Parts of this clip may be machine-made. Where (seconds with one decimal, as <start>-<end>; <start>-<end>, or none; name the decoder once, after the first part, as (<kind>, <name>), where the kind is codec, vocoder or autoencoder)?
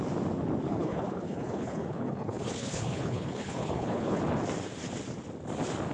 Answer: 0.7-4.2 (codec, HILCodec)